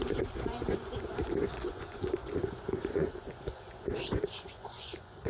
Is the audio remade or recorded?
remade